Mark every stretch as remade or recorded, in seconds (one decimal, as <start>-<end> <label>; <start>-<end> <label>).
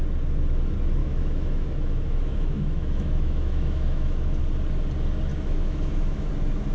0.0-1.0 recorded; 1.0-4.4 remade; 4.4-5.3 recorded; 5.3-6.3 remade; 6.3-6.7 recorded